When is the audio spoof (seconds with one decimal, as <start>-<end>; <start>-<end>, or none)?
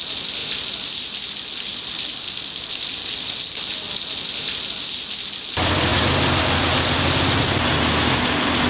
none